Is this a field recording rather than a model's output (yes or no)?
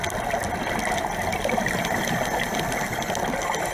yes